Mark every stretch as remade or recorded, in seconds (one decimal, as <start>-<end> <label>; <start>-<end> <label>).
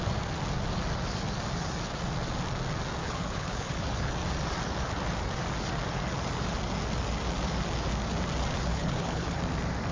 0.0-3.0 recorded; 3.0-4.1 remade; 4.1-8.7 recorded; 8.7-9.4 remade; 9.4-9.9 recorded